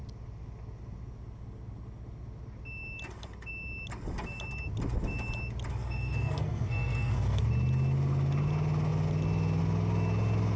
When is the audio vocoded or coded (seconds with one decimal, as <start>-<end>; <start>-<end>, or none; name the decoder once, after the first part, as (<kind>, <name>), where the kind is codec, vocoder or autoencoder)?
5.8-7.4 (codec, SNAC)